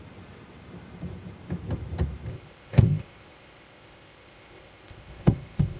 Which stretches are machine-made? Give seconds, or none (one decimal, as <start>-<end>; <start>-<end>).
2.3-5.8